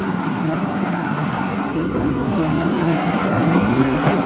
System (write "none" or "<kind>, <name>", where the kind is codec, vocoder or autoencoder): codec, SNAC